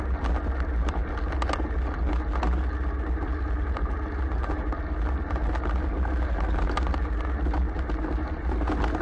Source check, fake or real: real